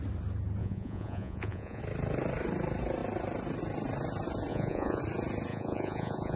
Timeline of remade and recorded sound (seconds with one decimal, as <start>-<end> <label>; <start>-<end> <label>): 0.0-0.6 recorded; 0.6-1.8 remade; 1.8-4.5 recorded; 4.5-5.0 remade; 5.0-5.5 recorded; 5.5-6.4 remade